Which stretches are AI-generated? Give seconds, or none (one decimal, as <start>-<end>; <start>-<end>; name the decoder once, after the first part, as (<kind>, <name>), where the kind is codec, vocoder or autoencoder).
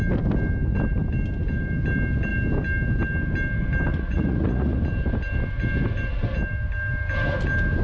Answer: 3.9-4.8 (vocoder, Vocos)